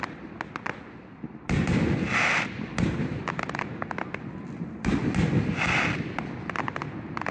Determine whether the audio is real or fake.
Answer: real